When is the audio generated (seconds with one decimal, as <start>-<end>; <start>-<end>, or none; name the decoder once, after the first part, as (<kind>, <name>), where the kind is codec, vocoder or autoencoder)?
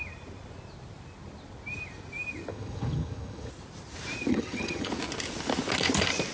2.5-3.5 (vocoder, HiFi-GAN); 4.3-4.9